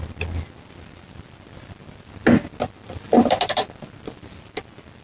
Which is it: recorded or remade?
recorded